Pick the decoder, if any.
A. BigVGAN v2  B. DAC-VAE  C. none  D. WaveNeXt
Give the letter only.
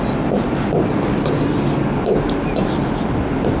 C